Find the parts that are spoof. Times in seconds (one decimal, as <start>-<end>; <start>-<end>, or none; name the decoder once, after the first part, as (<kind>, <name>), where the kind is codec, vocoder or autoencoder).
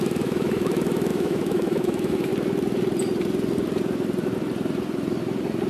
0.0-2.3 (autoencoder, DAC-VAE)